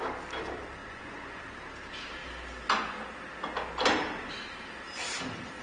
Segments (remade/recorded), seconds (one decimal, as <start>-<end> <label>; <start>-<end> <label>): 0.0-0.8 recorded; 0.8-1.4 remade; 1.4-5.6 recorded